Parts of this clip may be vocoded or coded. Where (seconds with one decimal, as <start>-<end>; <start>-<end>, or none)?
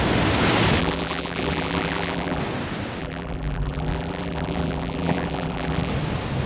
0.8-2.4; 3.0-5.9